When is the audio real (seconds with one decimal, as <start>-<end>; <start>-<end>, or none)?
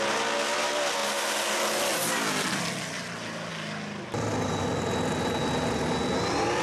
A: 0.0-6.6